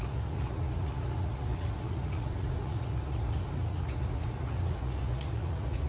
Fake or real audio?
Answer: fake